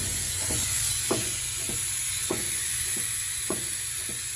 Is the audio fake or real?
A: fake